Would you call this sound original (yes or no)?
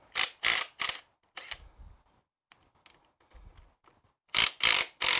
yes